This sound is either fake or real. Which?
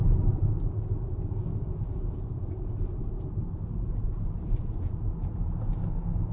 fake